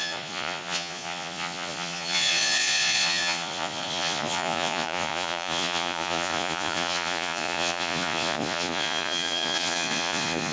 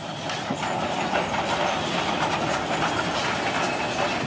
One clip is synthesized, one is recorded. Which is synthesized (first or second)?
first